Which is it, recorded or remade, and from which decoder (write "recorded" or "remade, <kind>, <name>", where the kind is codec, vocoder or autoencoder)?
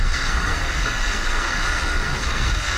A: remade, codec, SNAC